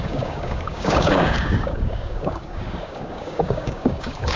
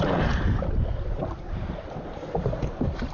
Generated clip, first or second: first